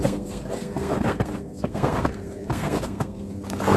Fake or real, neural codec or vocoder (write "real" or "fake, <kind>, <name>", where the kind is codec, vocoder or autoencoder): fake, codec, SNAC